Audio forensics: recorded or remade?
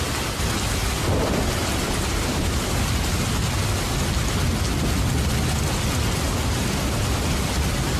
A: recorded